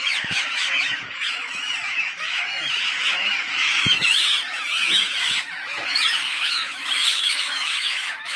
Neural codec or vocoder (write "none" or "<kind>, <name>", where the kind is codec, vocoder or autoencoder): autoencoder, DAC-VAE